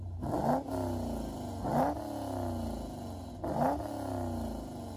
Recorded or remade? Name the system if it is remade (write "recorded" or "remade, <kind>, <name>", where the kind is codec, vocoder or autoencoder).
recorded